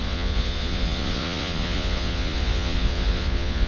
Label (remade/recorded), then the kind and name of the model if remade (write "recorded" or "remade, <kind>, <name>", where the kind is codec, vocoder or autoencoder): remade, vocoder, Vocos